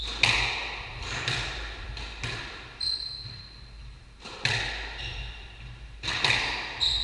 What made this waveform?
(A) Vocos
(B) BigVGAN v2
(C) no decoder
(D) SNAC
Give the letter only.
C